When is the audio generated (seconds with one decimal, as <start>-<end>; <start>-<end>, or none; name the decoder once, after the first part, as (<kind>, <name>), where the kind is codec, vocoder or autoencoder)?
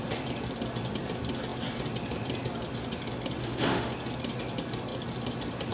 3.4-3.9 (autoencoder, DAC-VAE)